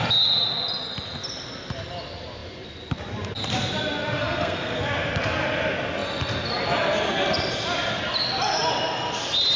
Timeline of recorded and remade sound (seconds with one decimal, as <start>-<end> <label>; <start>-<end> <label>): 0.0-4.2 recorded; 4.2-4.8 remade; 4.8-9.6 recorded

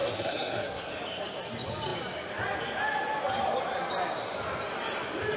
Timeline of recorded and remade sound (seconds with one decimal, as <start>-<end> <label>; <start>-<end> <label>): 0.0-0.9 remade; 0.9-5.4 recorded

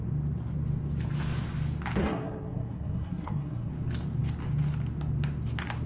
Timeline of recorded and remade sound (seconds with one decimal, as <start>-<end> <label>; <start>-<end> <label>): 0.0-2.0 recorded; 2.0-3.7 remade; 3.7-5.9 recorded